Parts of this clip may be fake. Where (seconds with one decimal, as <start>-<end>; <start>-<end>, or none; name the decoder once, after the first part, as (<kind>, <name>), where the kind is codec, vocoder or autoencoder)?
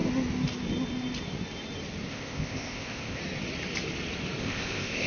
2.1-3.2 (codec, ZipCodec); 4.4-5.1